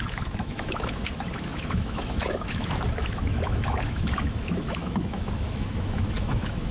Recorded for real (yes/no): no